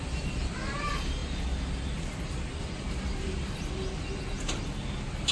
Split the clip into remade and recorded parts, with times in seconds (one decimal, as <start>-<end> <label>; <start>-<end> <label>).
0.0-5.3 recorded